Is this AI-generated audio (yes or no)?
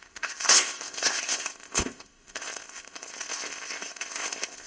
yes